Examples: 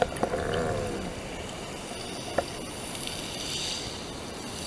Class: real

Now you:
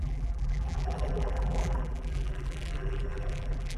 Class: fake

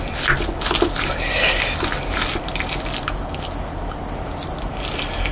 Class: real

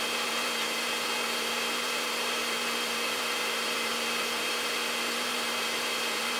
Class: fake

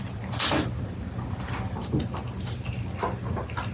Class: real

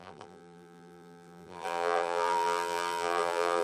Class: fake